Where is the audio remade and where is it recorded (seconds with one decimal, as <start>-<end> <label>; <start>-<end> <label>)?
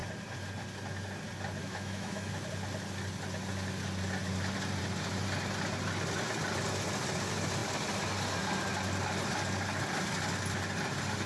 0.0-1.6 recorded; 1.6-2.3 remade; 2.3-11.3 recorded